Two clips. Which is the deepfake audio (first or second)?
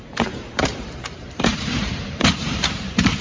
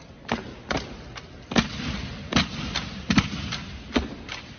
first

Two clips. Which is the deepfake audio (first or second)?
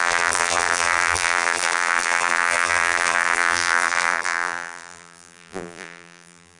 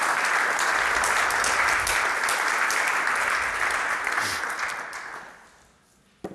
first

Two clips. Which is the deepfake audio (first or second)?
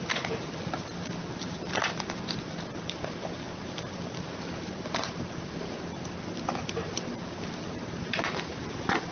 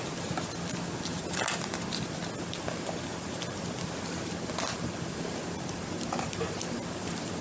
first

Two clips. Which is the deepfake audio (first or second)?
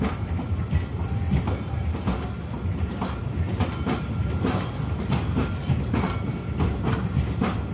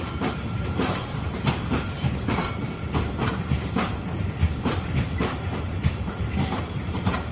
second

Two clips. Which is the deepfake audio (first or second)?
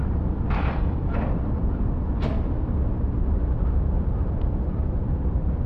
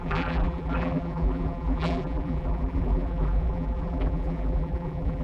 second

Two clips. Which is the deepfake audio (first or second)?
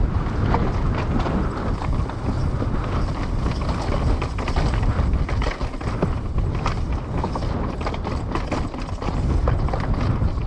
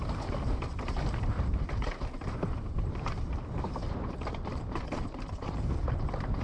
second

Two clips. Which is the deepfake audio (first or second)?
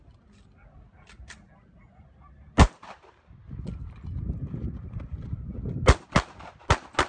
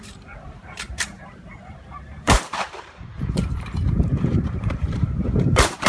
second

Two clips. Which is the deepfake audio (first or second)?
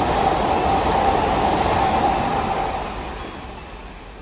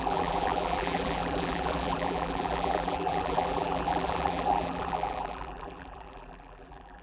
second